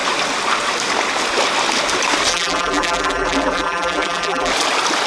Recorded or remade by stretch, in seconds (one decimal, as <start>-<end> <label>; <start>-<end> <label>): 0.0-2.3 recorded; 2.3-4.5 remade; 4.5-5.1 recorded

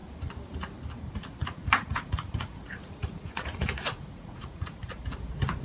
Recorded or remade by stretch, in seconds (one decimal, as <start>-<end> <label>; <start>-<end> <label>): 0.0-1.4 recorded; 1.4-4.8 remade; 4.8-5.6 recorded

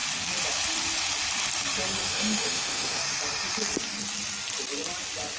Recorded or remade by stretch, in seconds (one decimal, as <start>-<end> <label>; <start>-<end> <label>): 0.0-2.1 recorded; 2.1-3.0 remade; 3.0-5.4 recorded

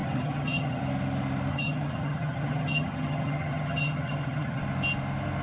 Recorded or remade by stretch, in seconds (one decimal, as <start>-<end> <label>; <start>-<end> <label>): 0.0-0.8 remade; 0.8-1.5 recorded; 1.5-4.6 remade; 4.6-5.4 recorded

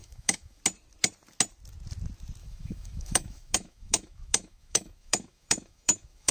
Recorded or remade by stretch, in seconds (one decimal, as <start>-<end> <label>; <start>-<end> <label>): 0.0-0.6 remade; 0.6-2.4 recorded; 2.4-6.3 remade

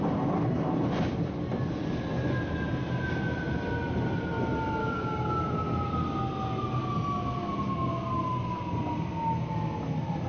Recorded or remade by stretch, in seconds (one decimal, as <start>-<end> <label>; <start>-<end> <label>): 0.0-4.8 recorded; 4.8-5.4 remade; 5.4-10.3 recorded

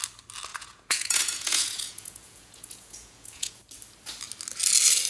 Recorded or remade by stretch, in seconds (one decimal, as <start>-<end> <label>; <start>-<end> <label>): 0.0-0.5 recorded; 0.5-3.6 remade; 3.6-5.1 recorded

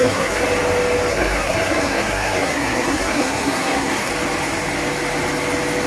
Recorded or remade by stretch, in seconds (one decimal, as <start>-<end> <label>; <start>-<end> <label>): 0.0-0.4 remade; 0.4-1.1 recorded; 1.1-4.1 remade; 4.1-5.9 recorded